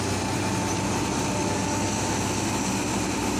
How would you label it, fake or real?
real